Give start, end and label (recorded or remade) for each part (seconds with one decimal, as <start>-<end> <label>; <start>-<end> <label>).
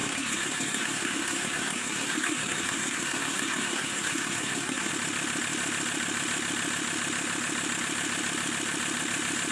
0.0-4.9 remade; 4.9-9.5 recorded